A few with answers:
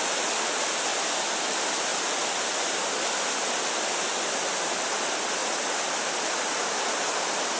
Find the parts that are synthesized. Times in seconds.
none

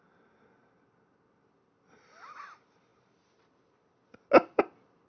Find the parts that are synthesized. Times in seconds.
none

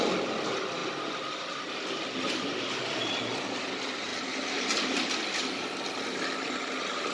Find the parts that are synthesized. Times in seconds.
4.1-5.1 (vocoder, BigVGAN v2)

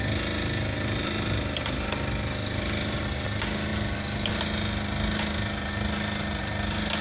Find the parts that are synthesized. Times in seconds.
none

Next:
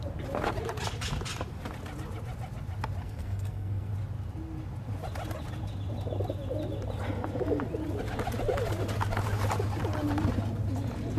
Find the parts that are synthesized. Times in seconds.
3.0-3.9 (codec, SNAC)